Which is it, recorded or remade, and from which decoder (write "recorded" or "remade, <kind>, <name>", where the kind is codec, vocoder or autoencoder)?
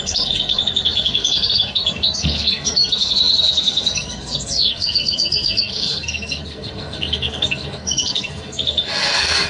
remade, codec, SNAC